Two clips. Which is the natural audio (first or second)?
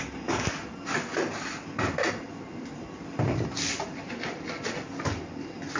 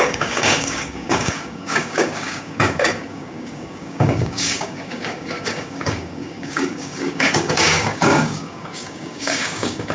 first